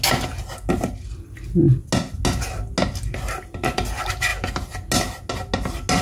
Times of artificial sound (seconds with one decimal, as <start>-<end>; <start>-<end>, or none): none